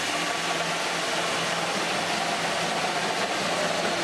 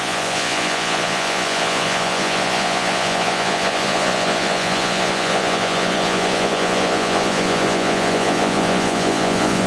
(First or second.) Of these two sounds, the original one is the first